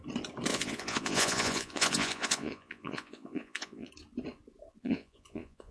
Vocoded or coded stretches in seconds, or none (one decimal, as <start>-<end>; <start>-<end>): 0.5-3.9; 4.8-5.7